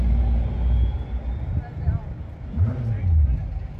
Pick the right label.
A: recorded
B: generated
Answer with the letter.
A